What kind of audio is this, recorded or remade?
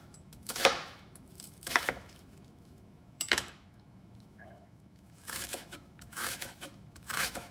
remade